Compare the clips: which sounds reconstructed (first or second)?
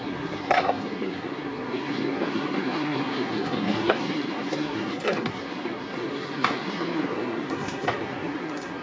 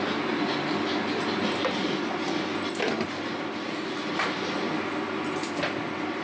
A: first